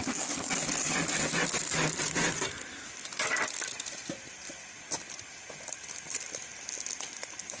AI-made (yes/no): no